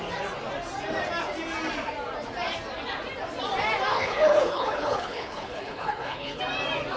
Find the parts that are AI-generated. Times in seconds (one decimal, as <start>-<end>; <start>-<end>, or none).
3.9-6.4